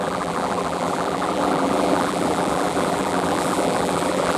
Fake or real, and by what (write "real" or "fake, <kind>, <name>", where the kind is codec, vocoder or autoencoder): fake, vocoder, BigVGAN v2